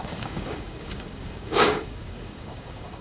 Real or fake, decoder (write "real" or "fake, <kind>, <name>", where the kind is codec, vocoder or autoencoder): fake, codec, DAC